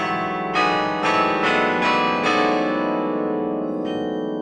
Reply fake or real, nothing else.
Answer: real